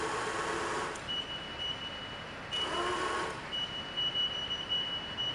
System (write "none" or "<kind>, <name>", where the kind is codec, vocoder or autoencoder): none